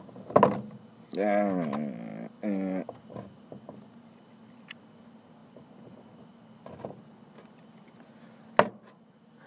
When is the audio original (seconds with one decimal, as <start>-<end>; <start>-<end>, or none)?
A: 0.0-9.5